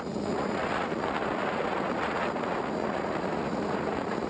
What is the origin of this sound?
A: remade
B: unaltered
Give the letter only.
A